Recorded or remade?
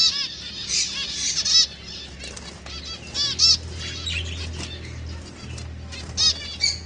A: recorded